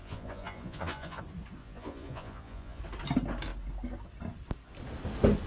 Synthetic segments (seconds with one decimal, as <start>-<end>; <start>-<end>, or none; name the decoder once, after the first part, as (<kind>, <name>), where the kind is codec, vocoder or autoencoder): 0.0-1.2 (vocoder, Vocos); 1.6-2.8